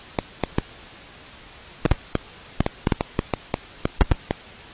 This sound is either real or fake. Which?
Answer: real